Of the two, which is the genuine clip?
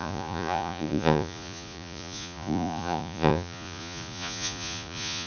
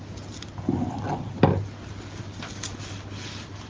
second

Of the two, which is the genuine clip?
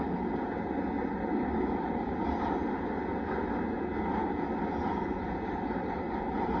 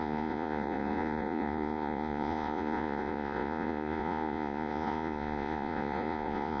first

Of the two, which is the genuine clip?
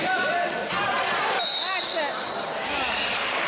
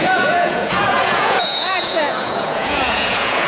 first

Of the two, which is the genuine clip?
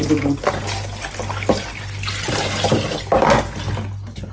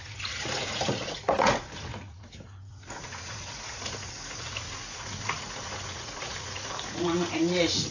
first